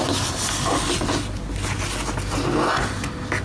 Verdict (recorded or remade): recorded